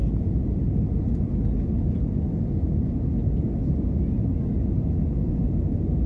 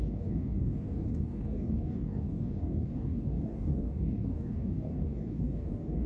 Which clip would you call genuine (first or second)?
first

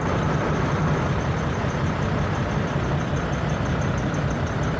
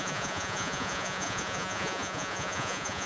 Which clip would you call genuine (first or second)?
first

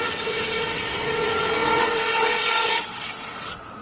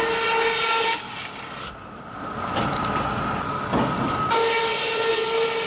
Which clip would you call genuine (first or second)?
second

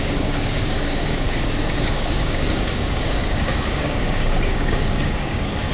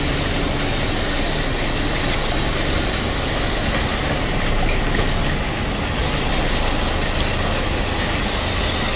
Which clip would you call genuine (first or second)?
second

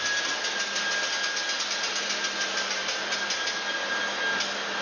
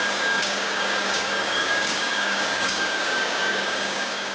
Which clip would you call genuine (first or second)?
first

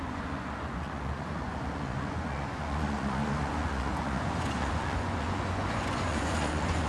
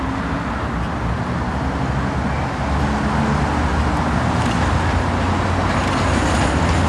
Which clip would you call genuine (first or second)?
second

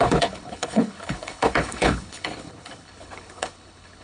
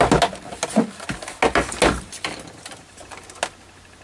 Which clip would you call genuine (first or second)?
second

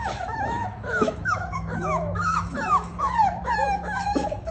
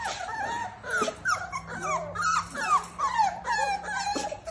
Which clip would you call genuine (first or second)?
second